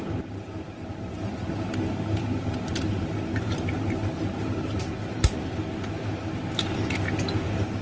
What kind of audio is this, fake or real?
real